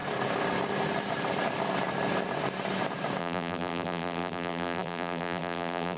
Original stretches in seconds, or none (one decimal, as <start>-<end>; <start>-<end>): 0.0-3.2